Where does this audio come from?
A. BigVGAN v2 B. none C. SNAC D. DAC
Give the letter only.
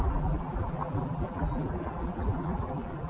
A